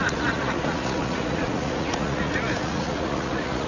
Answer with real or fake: fake